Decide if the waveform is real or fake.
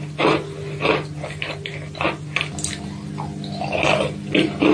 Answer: real